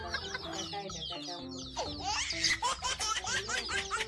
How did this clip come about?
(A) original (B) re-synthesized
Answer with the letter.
A